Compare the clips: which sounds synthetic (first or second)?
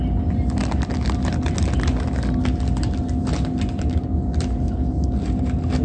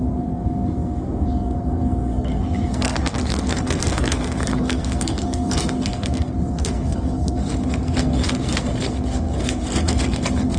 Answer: second